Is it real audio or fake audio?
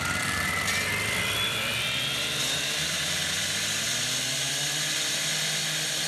fake